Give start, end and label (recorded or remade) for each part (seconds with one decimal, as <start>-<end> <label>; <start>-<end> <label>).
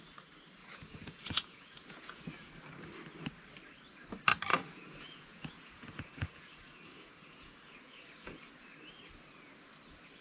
0.0-0.6 recorded; 0.6-2.2 remade; 2.2-4.5 recorded; 4.5-8.5 remade; 8.5-10.2 recorded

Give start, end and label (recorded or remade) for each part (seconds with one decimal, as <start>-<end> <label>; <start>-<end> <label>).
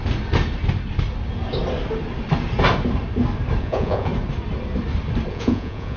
0.0-3.6 recorded; 3.6-4.1 remade; 4.1-5.3 recorded; 5.3-6.0 remade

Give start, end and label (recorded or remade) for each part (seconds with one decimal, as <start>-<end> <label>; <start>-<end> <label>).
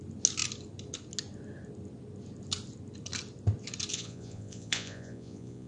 0.0-3.9 recorded; 3.9-5.7 remade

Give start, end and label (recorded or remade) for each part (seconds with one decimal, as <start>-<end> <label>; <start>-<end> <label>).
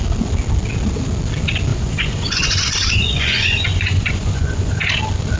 0.0-1.7 recorded; 1.7-4.9 remade; 4.9-5.4 recorded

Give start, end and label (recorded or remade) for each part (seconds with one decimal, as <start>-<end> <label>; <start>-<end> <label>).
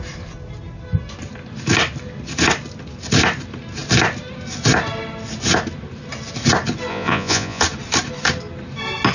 0.0-6.9 recorded; 6.9-7.6 remade; 7.6-9.1 recorded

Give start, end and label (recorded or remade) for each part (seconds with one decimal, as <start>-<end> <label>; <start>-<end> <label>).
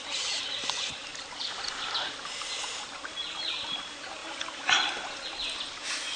0.0-6.2 recorded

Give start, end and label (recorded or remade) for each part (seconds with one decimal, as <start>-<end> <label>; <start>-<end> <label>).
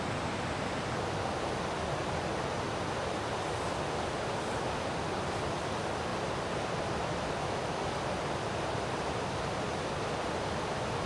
0.0-11.1 recorded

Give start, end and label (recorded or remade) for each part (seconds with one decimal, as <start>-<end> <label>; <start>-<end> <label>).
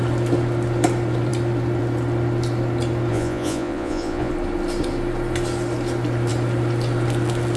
0.0-3.1 recorded; 3.1-4.3 remade; 4.3-7.6 recorded